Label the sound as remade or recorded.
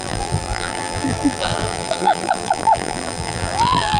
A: remade